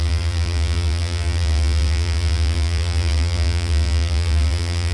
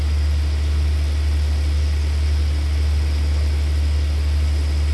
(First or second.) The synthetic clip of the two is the first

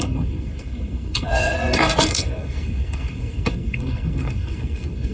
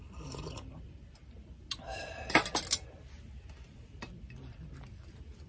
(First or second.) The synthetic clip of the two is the first